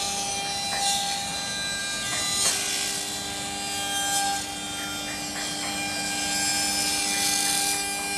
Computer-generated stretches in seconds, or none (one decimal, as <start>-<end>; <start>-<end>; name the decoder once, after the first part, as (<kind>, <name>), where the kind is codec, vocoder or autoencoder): none